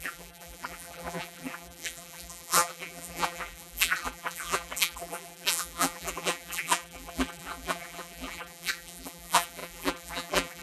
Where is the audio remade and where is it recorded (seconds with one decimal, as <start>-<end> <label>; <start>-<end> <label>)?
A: 0.0-10.6 remade

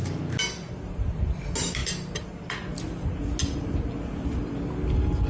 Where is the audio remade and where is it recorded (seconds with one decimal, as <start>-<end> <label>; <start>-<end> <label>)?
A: 0.0-0.4 recorded; 0.4-1.4 remade; 1.4-5.3 recorded

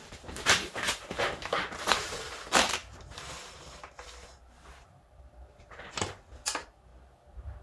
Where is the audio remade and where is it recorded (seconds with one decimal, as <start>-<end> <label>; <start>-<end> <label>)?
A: 0.0-6.9 remade; 6.9-7.6 recorded

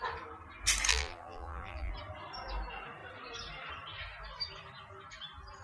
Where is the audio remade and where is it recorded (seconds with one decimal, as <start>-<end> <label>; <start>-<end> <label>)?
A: 0.0-0.9 recorded; 0.9-1.9 remade; 1.9-5.6 recorded

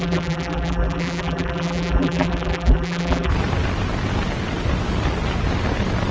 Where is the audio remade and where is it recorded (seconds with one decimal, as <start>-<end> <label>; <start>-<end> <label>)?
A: 0.0-3.3 remade; 3.3-6.1 recorded

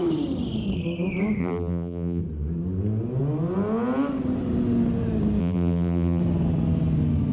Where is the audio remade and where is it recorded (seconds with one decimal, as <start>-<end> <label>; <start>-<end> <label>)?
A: 0.0-1.4 recorded; 1.4-2.2 remade; 2.2-5.4 recorded; 5.4-6.2 remade; 6.2-7.3 recorded

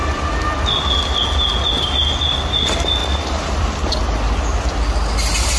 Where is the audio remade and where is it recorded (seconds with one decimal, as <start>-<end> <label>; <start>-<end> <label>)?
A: 0.0-3.0 recorded; 3.0-3.9 remade; 3.9-5.6 recorded